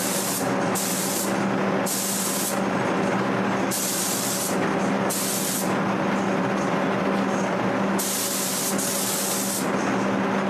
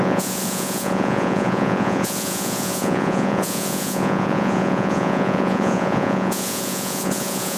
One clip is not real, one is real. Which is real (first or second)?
first